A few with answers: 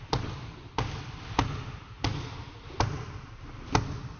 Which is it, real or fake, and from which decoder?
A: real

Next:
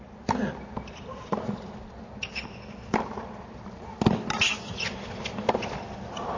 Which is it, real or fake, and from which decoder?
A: real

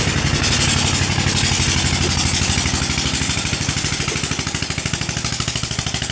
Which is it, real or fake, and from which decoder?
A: real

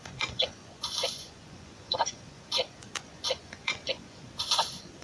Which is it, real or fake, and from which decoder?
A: fake, vocoder, Vocos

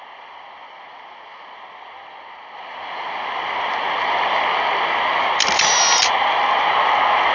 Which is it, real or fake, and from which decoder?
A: real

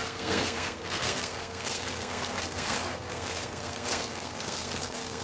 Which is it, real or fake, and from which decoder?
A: fake, codec, SNAC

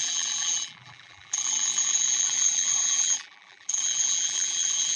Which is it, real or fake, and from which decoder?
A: fake, vocoder, BigVGAN v2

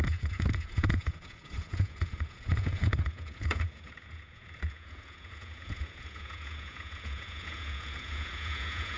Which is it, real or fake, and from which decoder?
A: fake, vocoder, Vocos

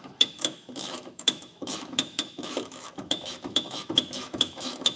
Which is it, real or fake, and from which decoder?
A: fake, autoencoder, DAC-VAE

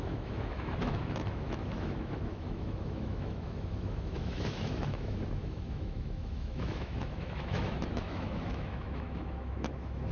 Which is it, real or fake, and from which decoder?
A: fake, autoencoder, DAC-VAE